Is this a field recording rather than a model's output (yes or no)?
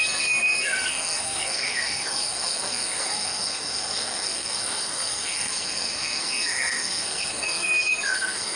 no